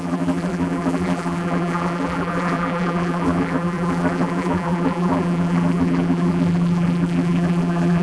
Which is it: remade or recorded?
remade